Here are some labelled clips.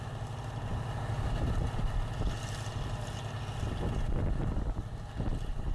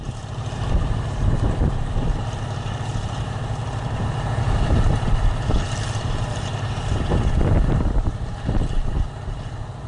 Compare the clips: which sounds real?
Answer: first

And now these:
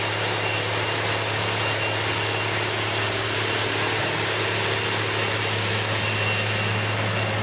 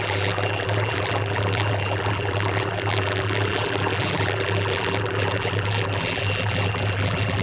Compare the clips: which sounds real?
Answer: first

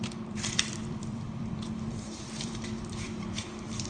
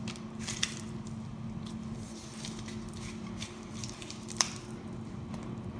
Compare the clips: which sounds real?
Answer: second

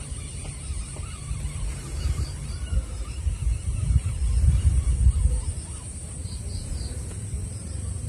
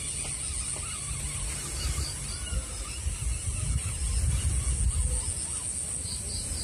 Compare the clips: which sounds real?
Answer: second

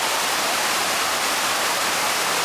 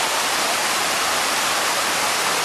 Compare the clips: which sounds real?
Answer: second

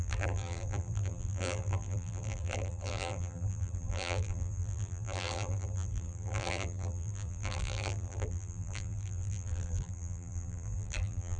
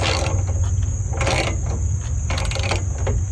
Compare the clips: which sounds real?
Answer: second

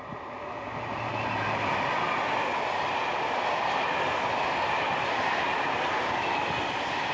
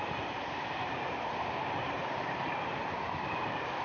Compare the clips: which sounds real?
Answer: first